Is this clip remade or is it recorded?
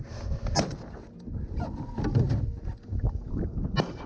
recorded